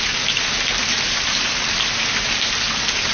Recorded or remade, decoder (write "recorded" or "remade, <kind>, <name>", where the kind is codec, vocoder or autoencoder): remade, vocoder, BigVGAN v2